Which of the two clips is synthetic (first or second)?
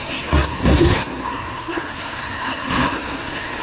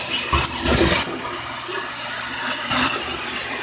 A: first